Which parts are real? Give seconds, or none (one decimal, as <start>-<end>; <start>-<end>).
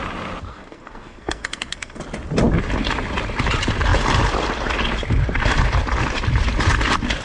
0.0-0.5; 2.0-7.2